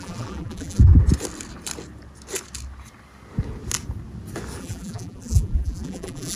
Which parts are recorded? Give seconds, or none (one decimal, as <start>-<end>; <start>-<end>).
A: 0.9-4.6